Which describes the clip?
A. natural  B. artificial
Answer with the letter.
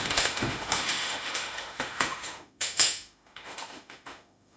B